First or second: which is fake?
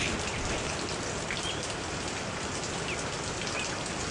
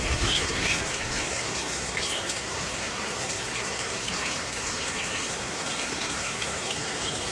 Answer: second